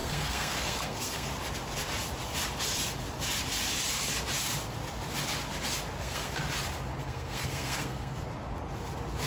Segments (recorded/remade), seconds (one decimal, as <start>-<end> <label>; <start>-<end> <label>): 0.0-1.3 remade; 1.3-6.0 recorded; 6.0-6.4 remade; 6.4-7.0 recorded; 7.0-8.3 remade; 8.3-9.3 recorded